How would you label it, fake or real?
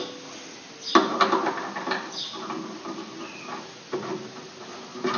real